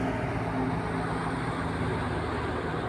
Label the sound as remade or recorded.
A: recorded